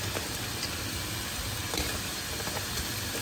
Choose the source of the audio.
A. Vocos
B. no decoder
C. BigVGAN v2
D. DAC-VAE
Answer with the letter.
C